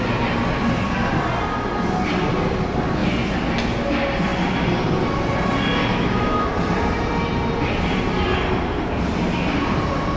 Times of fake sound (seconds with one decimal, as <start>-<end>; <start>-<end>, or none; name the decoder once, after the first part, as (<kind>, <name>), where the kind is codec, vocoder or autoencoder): 5.9-6.5 (autoencoder, DAC-VAE)